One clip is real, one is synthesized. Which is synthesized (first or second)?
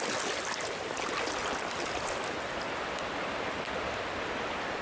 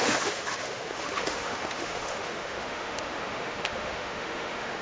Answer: second